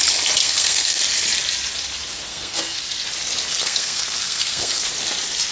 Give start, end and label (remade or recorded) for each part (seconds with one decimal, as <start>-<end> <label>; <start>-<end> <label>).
0.0-0.4 recorded; 0.4-1.0 remade; 1.0-2.3 recorded; 2.3-2.8 remade; 2.8-3.5 recorded; 3.5-4.9 remade; 4.9-5.5 recorded